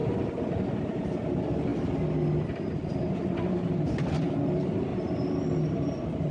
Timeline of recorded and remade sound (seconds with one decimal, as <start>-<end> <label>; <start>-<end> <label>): 0.0-1.7 remade; 1.7-3.0 recorded; 3.0-4.9 remade; 4.9-5.6 recorded; 5.6-6.3 remade